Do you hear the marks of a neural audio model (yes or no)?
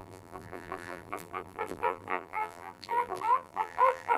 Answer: yes